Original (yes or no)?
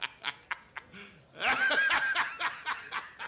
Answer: yes